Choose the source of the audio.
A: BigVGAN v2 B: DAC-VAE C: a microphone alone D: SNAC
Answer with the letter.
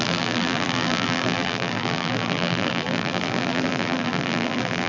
A